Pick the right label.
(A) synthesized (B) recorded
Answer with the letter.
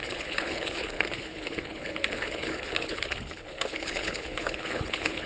A